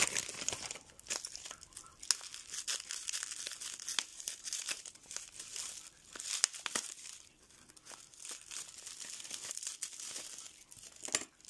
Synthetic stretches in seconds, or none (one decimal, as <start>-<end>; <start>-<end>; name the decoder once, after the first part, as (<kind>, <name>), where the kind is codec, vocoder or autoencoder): 4.1-5.7 (vocoder, BigVGAN v2)